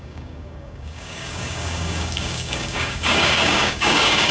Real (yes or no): no